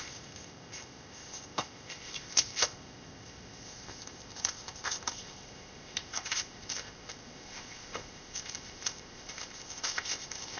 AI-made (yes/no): yes